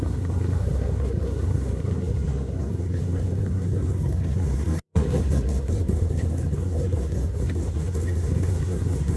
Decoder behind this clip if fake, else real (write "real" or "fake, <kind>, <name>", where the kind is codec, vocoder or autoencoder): fake, codec, SNAC